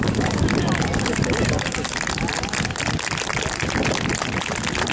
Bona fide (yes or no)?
yes